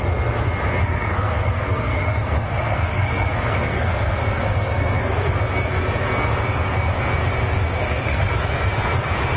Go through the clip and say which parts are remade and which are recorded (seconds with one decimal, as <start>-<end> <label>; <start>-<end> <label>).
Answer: 0.0-0.8 recorded; 0.8-5.4 remade; 5.4-7.8 recorded; 7.8-8.3 remade; 8.3-9.4 recorded